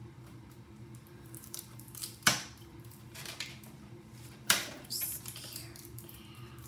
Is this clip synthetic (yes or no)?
yes